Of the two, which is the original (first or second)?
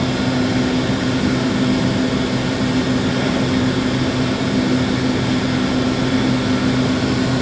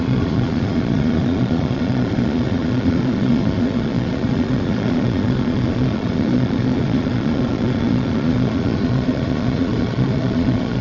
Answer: first